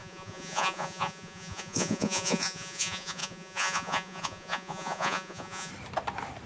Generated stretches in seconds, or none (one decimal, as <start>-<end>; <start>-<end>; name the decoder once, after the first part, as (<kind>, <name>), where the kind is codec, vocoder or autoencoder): 0.0-5.7 (vocoder, Vocos)